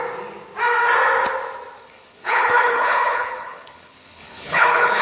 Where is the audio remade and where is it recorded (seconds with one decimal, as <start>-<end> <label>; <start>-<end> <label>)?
0.0-1.8 recorded; 1.8-5.0 remade